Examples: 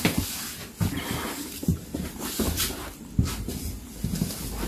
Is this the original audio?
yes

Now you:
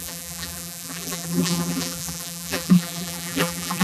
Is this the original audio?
no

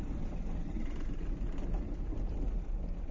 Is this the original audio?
yes